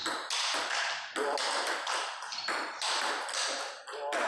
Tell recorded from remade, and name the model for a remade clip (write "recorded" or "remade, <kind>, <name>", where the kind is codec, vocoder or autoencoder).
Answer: recorded